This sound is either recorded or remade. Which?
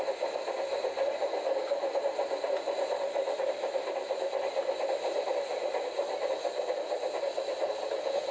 recorded